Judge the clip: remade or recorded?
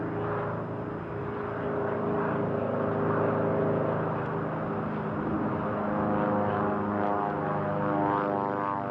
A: recorded